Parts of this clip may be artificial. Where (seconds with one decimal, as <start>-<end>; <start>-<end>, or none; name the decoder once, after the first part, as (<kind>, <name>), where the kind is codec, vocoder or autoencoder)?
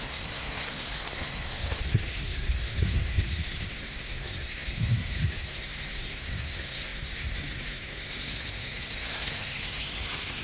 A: 0.0-10.4 (codec, SNAC)